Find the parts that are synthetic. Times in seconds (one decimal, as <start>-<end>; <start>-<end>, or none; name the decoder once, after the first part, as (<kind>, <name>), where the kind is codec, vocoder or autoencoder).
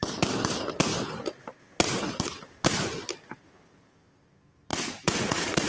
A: 4.7-5.7 (vocoder, Vocos)